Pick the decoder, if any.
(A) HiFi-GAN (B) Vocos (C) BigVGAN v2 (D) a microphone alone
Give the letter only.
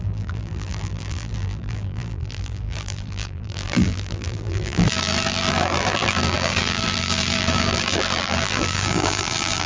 C